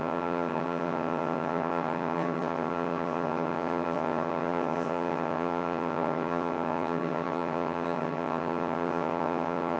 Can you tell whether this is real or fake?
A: fake